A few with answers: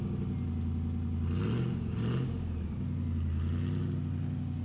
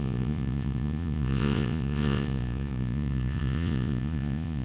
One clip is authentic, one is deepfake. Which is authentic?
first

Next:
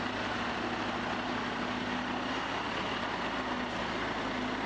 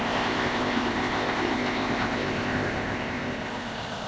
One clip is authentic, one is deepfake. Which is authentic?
first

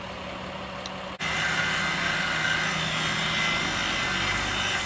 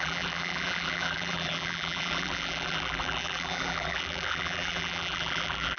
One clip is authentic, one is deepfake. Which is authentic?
first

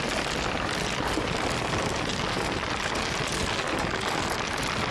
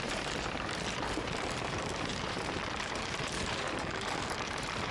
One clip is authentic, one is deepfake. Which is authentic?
first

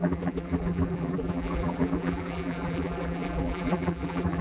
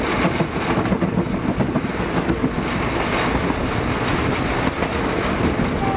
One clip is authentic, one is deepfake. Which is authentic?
second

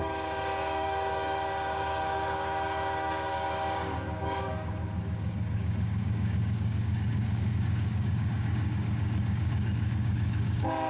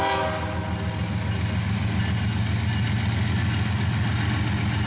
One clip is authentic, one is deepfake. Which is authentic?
second